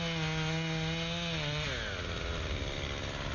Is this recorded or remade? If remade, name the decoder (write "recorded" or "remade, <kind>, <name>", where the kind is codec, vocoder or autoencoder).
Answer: recorded